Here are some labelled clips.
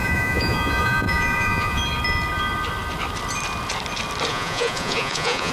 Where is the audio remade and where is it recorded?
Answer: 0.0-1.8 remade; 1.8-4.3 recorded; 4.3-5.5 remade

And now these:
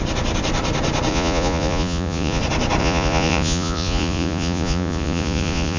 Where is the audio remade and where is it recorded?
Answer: 0.0-1.1 recorded; 1.1-2.4 remade; 2.4-2.8 recorded; 2.8-5.8 remade

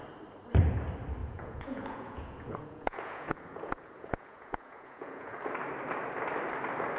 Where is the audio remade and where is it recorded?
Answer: 0.0-1.2 recorded; 1.2-5.4 remade; 5.4-7.0 recorded

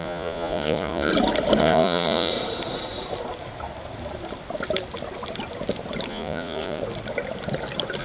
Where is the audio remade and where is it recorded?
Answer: 0.0-1.1 remade; 1.1-1.6 recorded; 1.6-2.3 remade; 2.3-6.1 recorded; 6.1-6.8 remade; 6.8-8.0 recorded

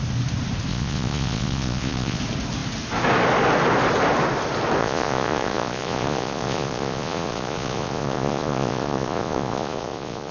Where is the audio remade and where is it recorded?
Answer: 0.0-0.7 recorded; 0.7-2.2 remade; 2.2-4.8 recorded; 4.8-10.3 remade

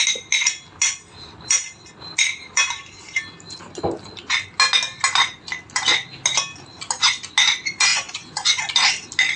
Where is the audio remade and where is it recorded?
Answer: 0.0-7.9 recorded; 7.9-8.6 remade; 8.6-9.4 recorded

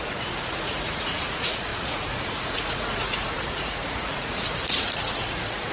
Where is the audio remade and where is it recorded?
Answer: 0.0-5.7 remade

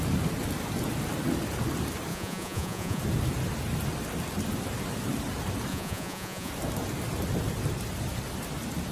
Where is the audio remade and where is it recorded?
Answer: 0.0-2.1 recorded; 2.1-3.0 remade; 3.0-5.7 recorded; 5.7-6.5 remade; 6.5-8.9 recorded